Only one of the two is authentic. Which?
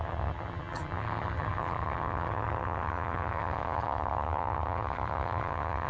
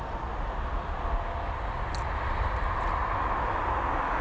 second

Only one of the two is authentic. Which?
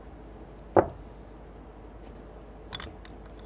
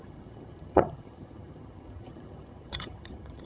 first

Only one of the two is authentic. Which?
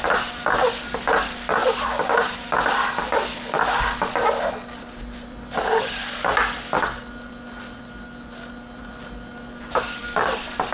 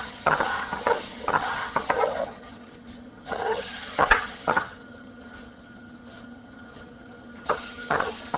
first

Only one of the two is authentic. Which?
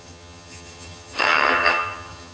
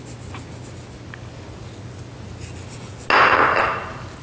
second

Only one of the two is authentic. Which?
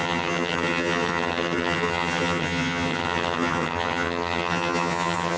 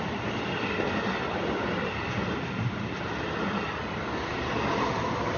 second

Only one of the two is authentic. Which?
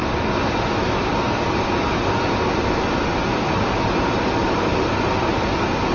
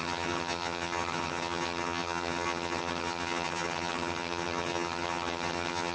first